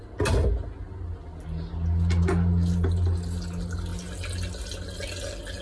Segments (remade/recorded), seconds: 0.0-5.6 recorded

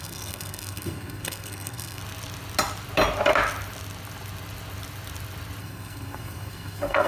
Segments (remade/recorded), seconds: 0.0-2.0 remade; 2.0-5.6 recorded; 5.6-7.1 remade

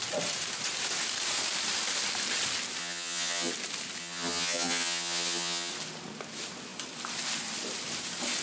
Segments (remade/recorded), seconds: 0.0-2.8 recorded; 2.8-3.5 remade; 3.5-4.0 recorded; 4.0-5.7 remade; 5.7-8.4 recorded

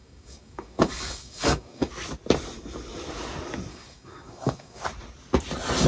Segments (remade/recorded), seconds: 0.0-1.9 remade; 1.9-3.7 recorded; 3.7-4.8 remade; 4.8-5.9 recorded

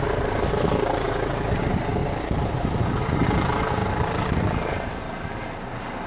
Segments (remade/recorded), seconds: 0.0-2.0 recorded; 2.0-3.0 remade; 3.0-3.8 recorded; 3.8-4.4 remade; 4.4-6.1 recorded

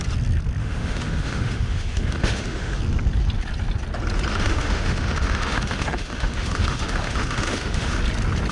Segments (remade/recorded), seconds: 0.0-0.6 recorded; 0.6-2.8 remade; 2.8-4.3 recorded; 4.3-8.0 remade; 8.0-8.5 recorded